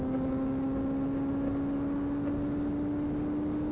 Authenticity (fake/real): real